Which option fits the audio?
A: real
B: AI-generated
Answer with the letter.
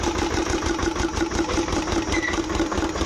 A